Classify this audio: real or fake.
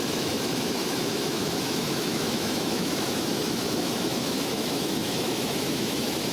fake